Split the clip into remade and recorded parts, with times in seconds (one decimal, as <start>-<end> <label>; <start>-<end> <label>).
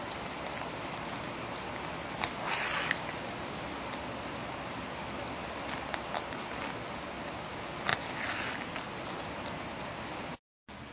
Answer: 0.0-10.9 recorded